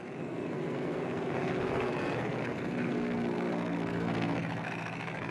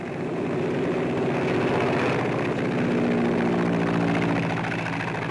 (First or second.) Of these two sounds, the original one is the second